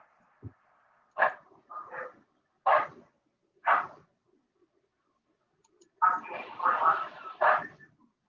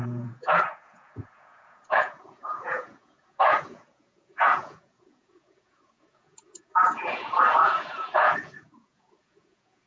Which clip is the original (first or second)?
first